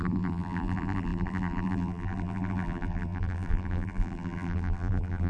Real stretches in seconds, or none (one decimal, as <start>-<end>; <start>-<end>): none